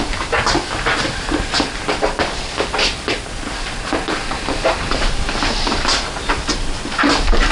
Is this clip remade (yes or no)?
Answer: no